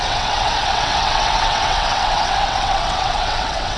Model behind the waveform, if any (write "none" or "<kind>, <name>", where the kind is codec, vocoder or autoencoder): vocoder, WaveNeXt